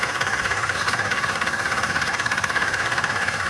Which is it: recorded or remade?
remade